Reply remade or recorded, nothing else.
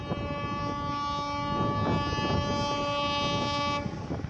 recorded